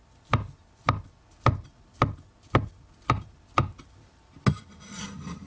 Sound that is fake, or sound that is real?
real